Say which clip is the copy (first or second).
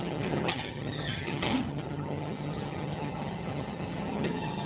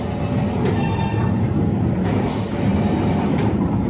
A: first